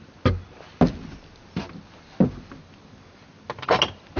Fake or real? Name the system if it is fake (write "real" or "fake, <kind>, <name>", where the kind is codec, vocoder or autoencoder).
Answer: real